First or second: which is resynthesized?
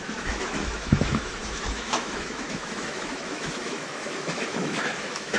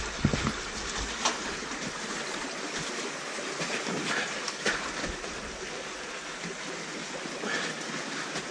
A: first